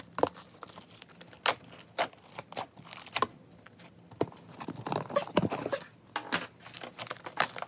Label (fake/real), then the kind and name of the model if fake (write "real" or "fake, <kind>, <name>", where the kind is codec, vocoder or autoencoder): real